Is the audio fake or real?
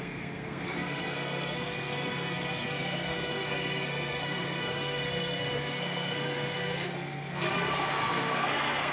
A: fake